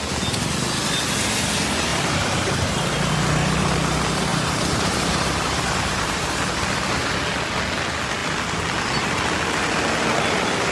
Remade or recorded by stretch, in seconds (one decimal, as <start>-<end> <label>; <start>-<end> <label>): 0.0-1.9 recorded; 1.9-2.7 remade; 2.7-4.3 recorded; 4.3-7.1 remade; 7.1-10.7 recorded